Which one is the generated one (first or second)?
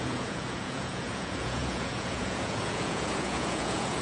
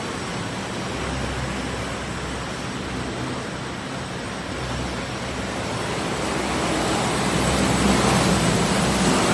first